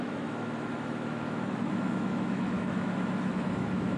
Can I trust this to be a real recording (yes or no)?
no